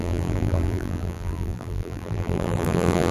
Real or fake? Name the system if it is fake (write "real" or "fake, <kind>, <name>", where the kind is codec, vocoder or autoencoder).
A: fake, vocoder, BigVGAN v2